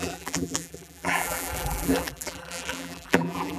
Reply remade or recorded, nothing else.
remade